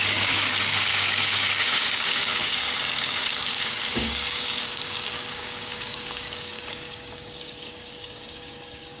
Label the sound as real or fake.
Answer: fake